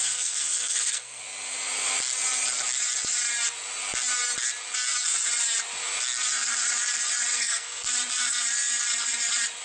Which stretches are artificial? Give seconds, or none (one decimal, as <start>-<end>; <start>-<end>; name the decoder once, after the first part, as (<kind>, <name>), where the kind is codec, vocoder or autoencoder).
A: 0.0-1.2 (codec, SNAC); 7.3-7.9